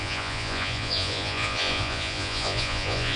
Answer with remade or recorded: remade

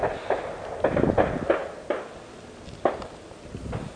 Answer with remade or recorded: recorded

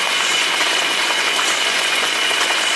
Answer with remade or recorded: remade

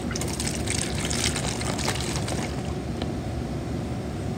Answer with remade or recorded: recorded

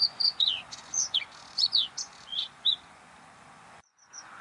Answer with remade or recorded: remade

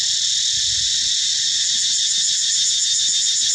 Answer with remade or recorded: recorded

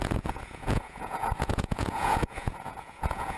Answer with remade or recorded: remade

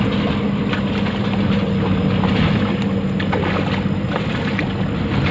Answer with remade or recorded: recorded